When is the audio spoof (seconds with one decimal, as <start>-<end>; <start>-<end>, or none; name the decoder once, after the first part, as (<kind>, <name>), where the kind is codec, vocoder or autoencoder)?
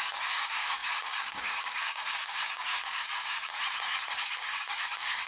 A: 0.0-3.5 (codec, DAC); 4.2-5.3